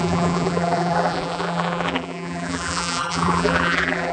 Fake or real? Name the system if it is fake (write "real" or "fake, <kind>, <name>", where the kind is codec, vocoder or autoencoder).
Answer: fake, vocoder, BigVGAN v2